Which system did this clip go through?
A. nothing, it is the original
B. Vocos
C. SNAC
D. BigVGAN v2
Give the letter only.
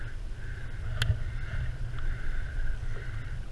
A